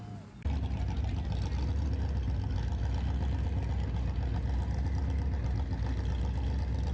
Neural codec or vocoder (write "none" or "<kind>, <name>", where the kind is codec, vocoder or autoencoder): none